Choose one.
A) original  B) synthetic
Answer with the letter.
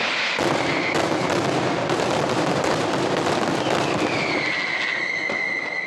A